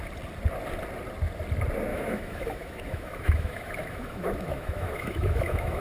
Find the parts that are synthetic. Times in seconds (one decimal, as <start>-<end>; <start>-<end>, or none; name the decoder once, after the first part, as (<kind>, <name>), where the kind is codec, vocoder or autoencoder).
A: 1.9-5.8 (autoencoder, DAC-VAE)